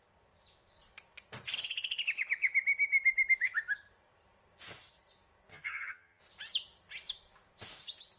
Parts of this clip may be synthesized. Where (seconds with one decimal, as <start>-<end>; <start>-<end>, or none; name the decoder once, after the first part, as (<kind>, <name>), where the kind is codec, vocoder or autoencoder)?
5.5-6.2 (vocoder, HiFi-GAN)